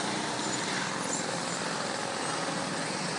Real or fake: real